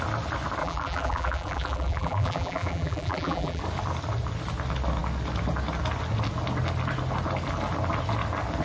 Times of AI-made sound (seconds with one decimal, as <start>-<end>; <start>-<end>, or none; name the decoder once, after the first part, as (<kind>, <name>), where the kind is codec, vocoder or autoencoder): 0.6-3.6 (vocoder, BigVGAN v2)